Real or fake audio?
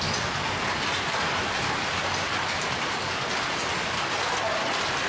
real